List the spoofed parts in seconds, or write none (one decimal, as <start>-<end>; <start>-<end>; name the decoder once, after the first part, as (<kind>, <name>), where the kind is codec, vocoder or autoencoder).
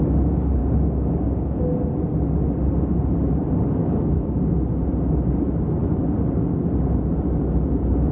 0.6-1.7 (codec, DAC); 3.8-4.7